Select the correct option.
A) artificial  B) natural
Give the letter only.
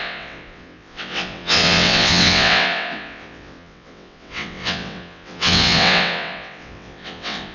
A